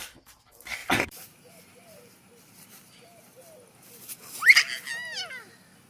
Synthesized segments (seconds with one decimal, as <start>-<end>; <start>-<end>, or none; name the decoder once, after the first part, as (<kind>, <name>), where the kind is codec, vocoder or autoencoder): 0.0-2.3 (vocoder, BigVGAN v2)